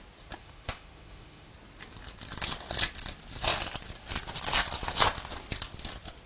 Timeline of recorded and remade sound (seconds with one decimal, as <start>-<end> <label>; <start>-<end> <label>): 0.0-0.4 recorded; 0.4-1.5 remade; 1.5-6.3 recorded